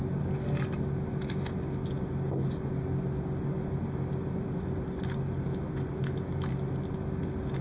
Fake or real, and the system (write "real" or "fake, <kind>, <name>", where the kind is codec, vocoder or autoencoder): real